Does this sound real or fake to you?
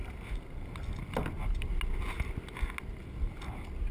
real